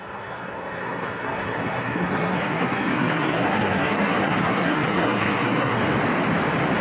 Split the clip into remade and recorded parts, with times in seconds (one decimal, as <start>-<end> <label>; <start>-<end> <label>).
0.0-5.8 remade; 5.8-6.8 recorded